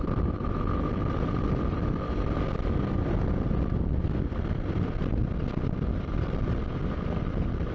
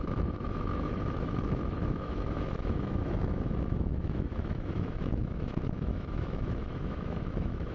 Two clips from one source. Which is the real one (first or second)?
first